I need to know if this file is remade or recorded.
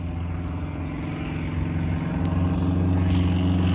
recorded